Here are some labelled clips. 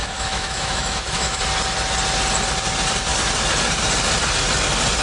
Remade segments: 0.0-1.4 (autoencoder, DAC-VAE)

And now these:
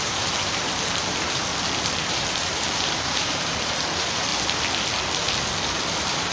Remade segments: 0.0-4.3 (vocoder, BigVGAN v2); 5.7-6.3